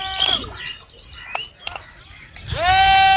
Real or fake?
real